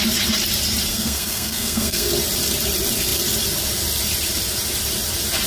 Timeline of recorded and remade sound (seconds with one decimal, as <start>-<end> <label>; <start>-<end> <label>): 0.0-0.9 recorded; 0.9-2.1 remade; 2.1-5.5 recorded